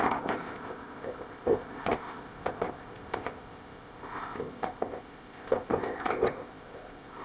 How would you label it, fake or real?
fake